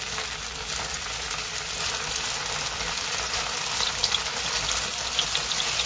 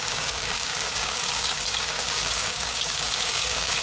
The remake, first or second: second